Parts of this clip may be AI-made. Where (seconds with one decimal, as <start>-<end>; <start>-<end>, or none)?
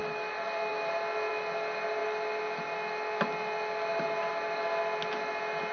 none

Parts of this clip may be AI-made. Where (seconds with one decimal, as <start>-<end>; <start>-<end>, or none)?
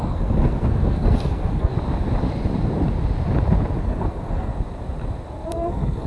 0.0-1.7; 3.8-4.5; 5.5-6.1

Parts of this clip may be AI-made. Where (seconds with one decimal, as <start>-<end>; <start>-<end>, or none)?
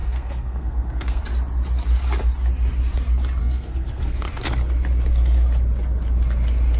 0.0-1.2; 3.4-4.3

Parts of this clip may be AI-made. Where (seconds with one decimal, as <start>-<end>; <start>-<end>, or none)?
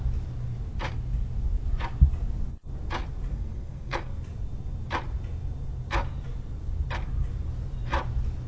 3.3-4.1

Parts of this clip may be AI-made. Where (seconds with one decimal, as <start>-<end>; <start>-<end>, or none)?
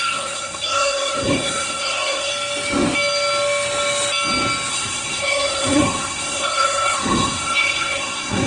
0.0-2.3; 4.7-8.5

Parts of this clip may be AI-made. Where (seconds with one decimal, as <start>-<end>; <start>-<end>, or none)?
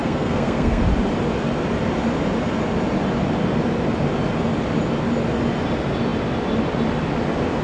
0.0-0.8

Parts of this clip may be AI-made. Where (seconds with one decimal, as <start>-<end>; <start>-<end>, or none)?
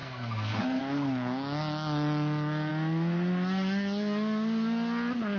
0.0-0.8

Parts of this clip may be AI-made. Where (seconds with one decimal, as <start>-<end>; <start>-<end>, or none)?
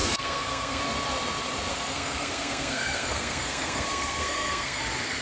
0.0-0.8; 1.7-4.8